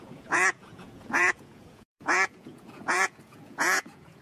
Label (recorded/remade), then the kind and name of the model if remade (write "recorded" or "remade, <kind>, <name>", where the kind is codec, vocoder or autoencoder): remade, vocoder, Vocos